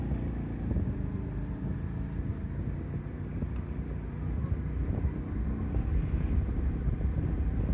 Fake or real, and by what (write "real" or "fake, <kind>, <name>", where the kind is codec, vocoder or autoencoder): real